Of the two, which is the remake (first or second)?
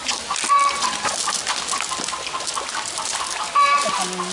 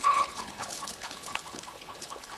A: second